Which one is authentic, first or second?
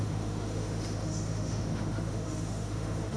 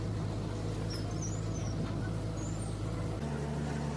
second